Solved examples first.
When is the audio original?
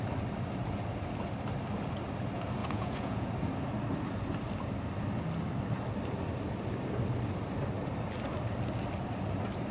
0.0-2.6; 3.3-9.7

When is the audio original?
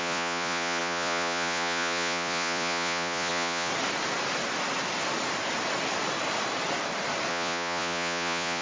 3.7-7.3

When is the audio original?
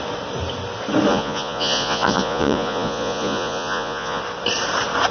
0.0-1.1; 4.2-5.1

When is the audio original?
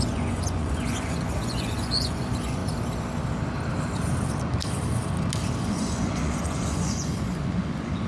2.6-5.6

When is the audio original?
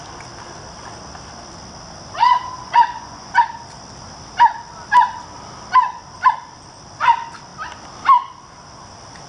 0.0-2.2; 3.5-9.3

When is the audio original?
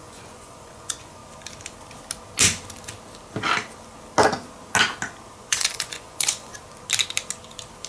1.2-5.4; 6.5-7.9